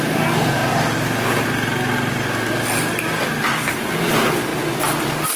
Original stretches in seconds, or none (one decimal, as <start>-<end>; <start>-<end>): 0.0-5.4